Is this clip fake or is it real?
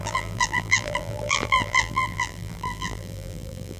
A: fake